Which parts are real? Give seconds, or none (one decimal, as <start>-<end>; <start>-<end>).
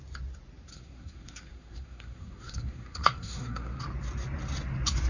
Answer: 0.0-0.7; 3.8-5.1